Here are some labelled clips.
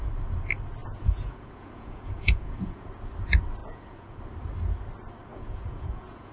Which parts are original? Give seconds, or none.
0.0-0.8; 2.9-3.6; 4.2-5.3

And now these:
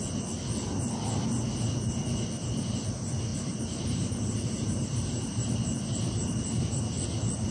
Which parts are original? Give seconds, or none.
0.0-3.3; 6.8-7.5

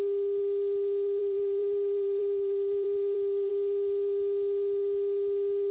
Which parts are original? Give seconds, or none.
0.0-1.2; 3.5-5.7

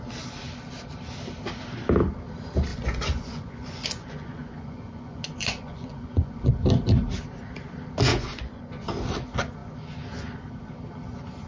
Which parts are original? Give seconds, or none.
0.0-2.7; 6.5-8.1; 8.7-11.5

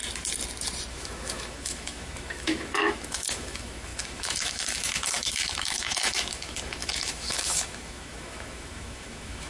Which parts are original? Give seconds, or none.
0.0-0.9